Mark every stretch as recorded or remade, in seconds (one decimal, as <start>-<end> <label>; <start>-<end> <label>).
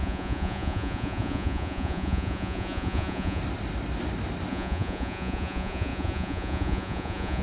0.0-3.4 remade; 3.4-4.5 recorded; 4.5-7.4 remade